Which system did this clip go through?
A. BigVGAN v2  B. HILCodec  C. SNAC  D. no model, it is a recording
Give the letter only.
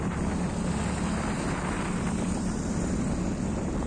D